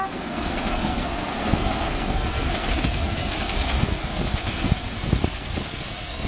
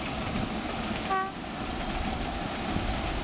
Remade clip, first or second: first